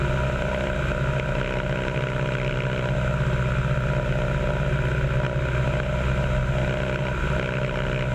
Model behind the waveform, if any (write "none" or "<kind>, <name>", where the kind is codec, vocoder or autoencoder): none